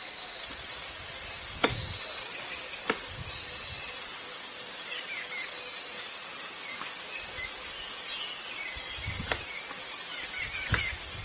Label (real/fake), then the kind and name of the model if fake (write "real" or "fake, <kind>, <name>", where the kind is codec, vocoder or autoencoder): real